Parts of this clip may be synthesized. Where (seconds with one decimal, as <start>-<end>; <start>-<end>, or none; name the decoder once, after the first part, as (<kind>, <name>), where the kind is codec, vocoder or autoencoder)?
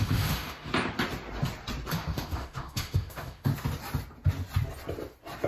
0.0-0.7 (autoencoder, DAC-VAE); 1.9-3.5